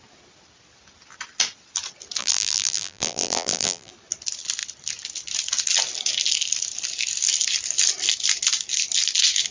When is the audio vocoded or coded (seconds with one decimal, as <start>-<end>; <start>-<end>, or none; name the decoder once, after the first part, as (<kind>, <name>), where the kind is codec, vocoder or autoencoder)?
2.2-3.9 (vocoder, BigVGAN v2)